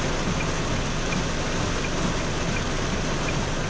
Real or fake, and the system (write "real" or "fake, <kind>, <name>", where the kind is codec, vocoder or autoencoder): real